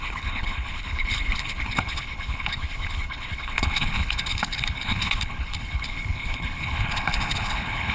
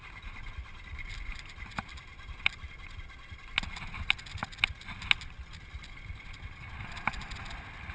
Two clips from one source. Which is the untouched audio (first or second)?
second